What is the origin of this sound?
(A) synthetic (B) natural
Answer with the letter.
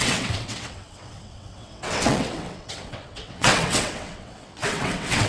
A